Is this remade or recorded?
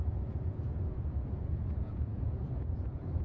remade